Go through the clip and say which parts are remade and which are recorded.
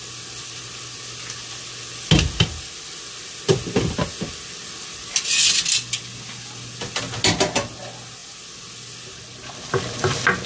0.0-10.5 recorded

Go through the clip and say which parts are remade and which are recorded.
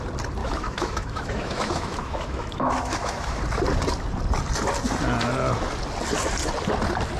0.0-0.4 recorded; 0.4-3.4 remade; 3.4-7.2 recorded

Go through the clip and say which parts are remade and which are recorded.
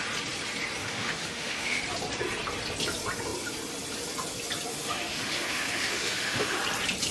0.0-0.8 recorded; 0.8-1.8 remade; 1.8-4.7 recorded; 4.7-6.6 remade; 6.6-7.1 recorded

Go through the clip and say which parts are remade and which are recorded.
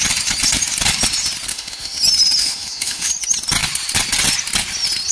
0.0-1.5 recorded; 1.5-2.0 remade; 2.0-2.4 recorded; 2.4-3.1 remade; 3.1-5.1 recorded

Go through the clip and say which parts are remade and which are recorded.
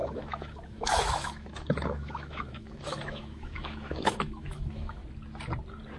0.0-5.0 remade; 5.0-6.0 recorded